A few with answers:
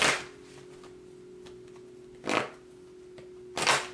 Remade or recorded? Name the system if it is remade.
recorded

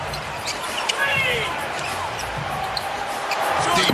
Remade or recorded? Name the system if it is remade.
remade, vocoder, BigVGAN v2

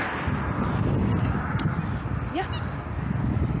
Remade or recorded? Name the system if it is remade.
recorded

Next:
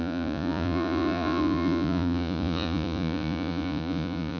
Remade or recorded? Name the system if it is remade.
remade, vocoder, Vocos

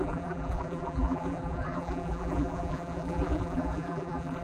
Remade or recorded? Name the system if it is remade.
remade, vocoder, BigVGAN v2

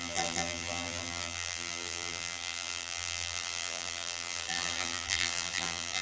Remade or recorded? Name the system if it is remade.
remade, vocoder, BigVGAN v2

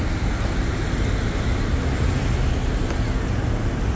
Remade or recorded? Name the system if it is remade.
recorded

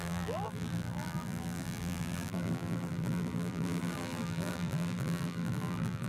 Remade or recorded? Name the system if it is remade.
remade, vocoder, BigVGAN v2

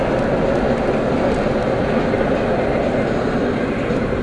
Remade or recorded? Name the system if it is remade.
recorded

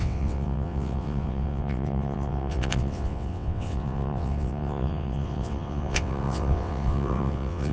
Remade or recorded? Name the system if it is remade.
remade, vocoder, WaveNeXt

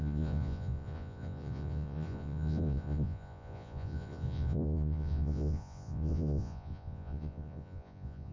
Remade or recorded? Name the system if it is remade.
remade, vocoder, Vocos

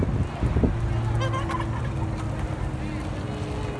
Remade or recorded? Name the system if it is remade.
recorded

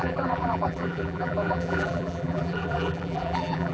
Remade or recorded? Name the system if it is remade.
remade, vocoder, BigVGAN v2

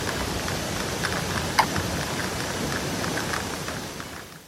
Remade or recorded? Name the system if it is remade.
recorded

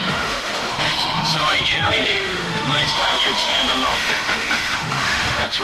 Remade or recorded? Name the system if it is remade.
remade, autoencoder, DAC-VAE